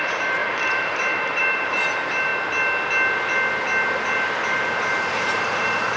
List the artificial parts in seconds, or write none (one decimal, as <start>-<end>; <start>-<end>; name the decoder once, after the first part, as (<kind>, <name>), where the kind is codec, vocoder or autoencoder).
0.0-2.3 (vocoder, BigVGAN v2); 5.1-6.0